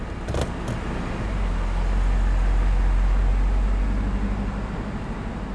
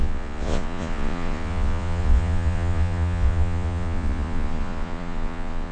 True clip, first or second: first